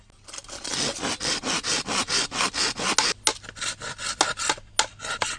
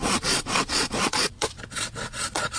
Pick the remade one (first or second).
second